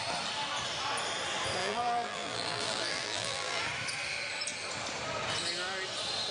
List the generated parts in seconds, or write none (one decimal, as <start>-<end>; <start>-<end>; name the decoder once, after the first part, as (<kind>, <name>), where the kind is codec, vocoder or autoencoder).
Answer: 1.6-3.6 (vocoder, BigVGAN v2)